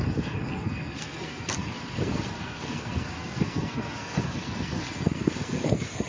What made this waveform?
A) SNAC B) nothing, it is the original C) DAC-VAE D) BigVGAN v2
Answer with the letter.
A